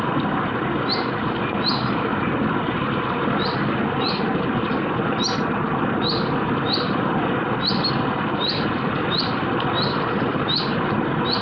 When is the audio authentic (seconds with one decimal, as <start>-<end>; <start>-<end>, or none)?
0.0-8.4; 9.7-11.4